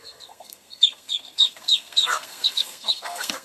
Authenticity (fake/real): fake